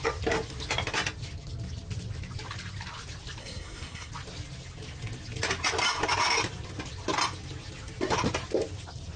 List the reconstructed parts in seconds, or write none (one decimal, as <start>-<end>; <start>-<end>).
3.4-4.1